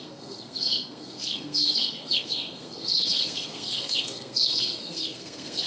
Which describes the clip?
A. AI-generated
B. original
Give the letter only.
A